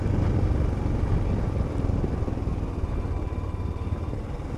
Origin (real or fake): real